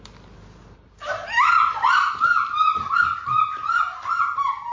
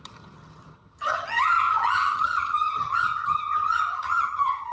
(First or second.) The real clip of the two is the first